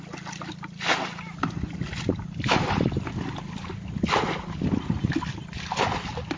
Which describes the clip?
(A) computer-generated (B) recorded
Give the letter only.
B